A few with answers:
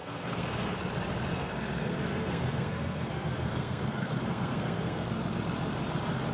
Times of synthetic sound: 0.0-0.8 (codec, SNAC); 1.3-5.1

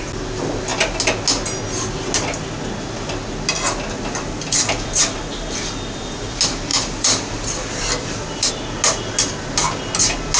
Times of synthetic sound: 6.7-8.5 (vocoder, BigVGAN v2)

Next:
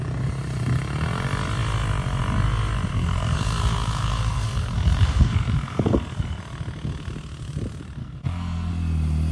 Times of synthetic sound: 2.9-6.4 (codec, SNAC); 8.0-8.7

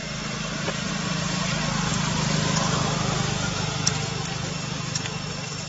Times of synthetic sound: 0.0-0.9 (vocoder, BigVGAN v2)

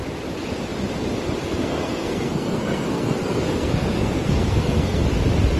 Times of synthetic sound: 1.6-5.0 (codec, SNAC)

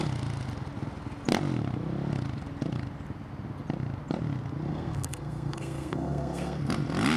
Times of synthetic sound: 4.7-6.6 (codec, SNAC)